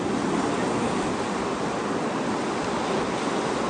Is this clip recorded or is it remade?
recorded